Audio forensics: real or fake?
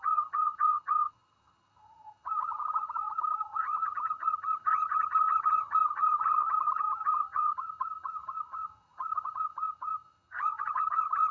fake